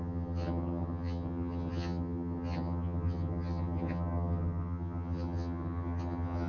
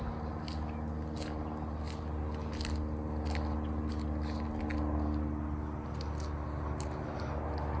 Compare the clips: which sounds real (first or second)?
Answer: second